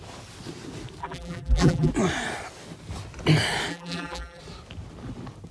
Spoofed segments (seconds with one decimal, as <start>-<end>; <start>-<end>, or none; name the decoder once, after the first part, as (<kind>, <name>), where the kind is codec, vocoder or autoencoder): 1.0-1.9 (vocoder, BigVGAN v2); 3.7-4.4